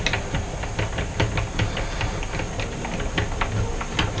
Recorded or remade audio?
recorded